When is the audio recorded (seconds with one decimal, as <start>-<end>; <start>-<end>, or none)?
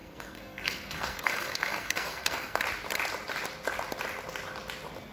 2.6-5.1